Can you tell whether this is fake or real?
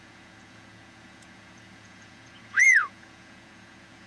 fake